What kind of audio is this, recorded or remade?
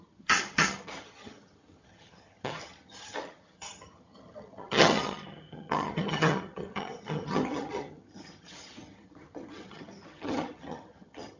remade